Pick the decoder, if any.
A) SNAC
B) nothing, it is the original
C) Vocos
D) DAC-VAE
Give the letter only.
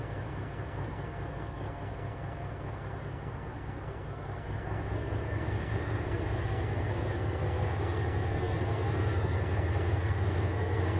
A